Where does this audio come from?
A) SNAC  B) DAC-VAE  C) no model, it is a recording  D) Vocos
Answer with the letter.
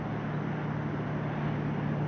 C